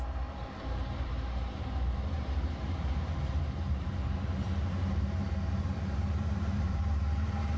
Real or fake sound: fake